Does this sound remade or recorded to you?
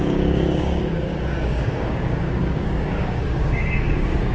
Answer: remade